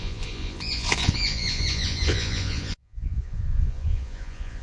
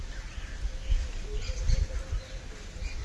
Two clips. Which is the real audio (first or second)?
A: second